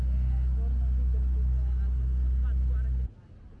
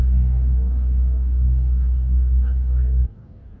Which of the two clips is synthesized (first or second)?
second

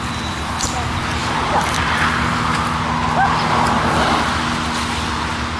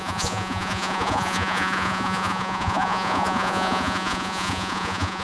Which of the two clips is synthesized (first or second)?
second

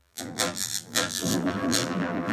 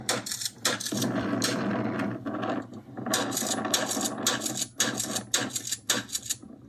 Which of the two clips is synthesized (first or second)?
first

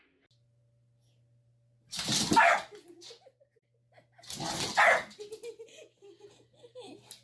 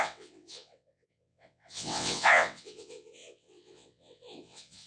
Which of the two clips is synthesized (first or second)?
second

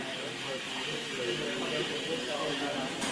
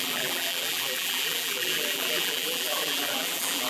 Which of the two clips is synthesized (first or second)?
second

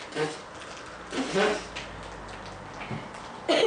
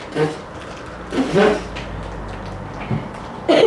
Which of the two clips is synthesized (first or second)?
second